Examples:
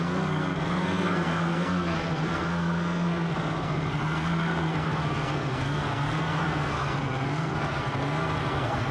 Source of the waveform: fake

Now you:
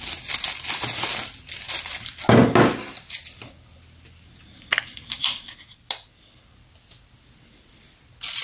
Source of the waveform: real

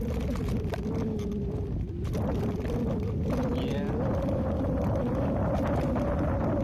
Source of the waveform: real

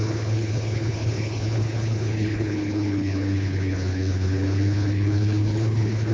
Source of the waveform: fake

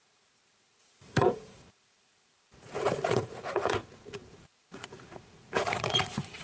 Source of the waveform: fake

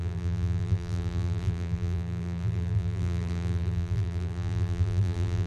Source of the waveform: fake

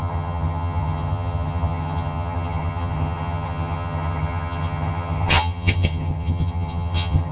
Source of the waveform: fake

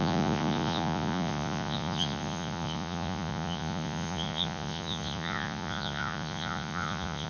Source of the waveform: fake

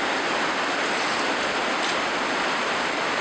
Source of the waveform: real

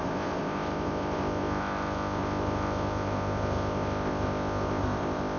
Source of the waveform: fake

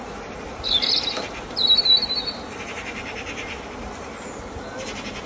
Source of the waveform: real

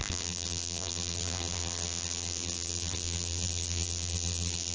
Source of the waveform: fake